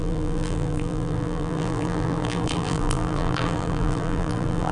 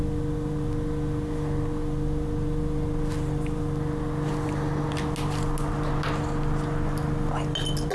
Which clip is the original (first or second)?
second